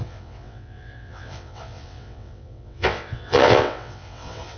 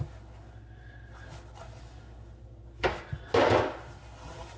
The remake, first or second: first